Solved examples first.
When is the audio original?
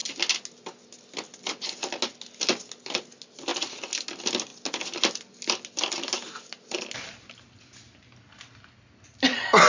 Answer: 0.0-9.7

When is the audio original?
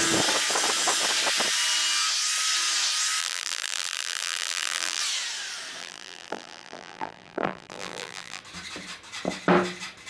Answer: 0.0-3.2; 5.0-5.8; 8.4-10.1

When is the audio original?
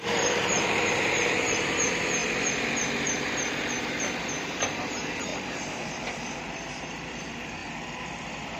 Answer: 2.2-4.2; 5.3-6.7; 7.6-8.6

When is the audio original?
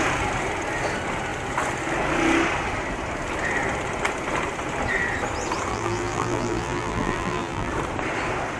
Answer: 0.0-5.7; 7.7-8.6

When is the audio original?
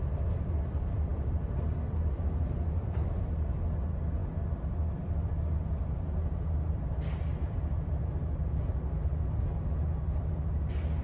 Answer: 0.0-11.0